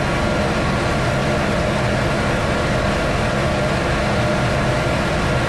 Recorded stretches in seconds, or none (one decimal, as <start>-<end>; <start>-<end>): 0.0-5.5

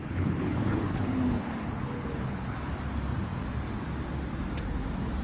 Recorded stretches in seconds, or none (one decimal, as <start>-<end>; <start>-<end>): 2.7-5.2

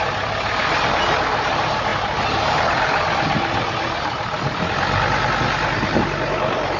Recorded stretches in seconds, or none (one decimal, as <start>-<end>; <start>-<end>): 0.0-6.8

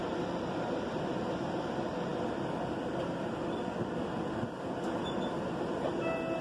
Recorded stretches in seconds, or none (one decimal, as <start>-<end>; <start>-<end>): 0.0-6.4

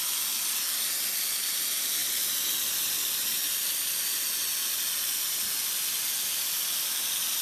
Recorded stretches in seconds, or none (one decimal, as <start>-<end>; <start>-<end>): 0.0-7.4

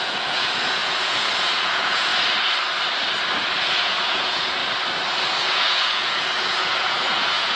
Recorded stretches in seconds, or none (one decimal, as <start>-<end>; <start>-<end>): 2.1-3.6; 4.6-5.4